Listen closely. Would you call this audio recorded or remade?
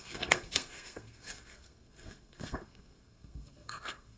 remade